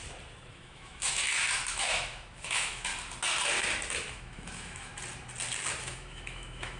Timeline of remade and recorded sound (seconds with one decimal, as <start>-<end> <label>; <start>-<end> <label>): 0.0-0.5 recorded; 0.5-1.2 remade; 1.2-1.7 recorded; 1.7-2.9 remade; 2.9-4.1 recorded; 4.1-4.9 remade; 4.9-5.8 recorded; 5.8-6.8 remade